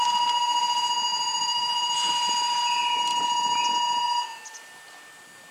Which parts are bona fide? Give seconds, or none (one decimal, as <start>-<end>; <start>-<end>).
0.0-5.5